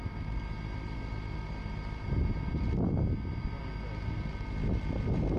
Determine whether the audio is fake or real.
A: real